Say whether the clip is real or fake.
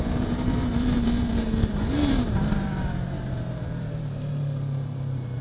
fake